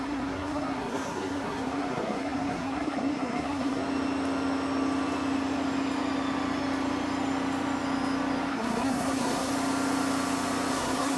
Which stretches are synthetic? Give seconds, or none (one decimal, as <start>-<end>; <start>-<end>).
0.0-3.8; 8.5-9.5; 10.7-11.2